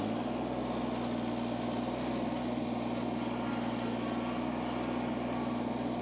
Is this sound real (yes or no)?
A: yes